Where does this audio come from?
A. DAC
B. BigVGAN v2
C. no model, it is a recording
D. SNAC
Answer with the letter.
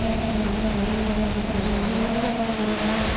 C